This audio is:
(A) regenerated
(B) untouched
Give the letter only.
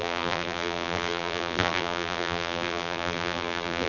A